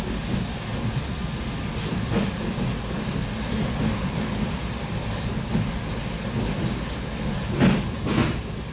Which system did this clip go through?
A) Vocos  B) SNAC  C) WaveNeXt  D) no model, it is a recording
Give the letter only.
D